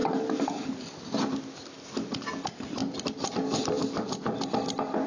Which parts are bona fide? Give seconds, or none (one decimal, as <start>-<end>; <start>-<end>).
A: 0.0-2.8; 3.6-5.1